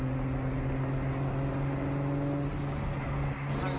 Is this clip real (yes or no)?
yes